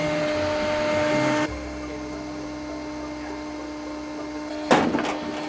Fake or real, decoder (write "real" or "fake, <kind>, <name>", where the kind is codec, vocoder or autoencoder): real